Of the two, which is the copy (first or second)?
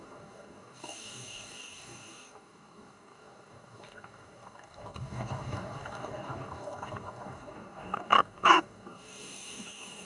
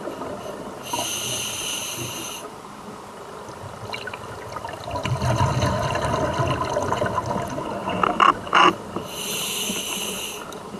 first